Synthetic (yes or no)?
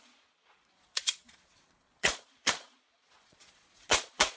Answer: yes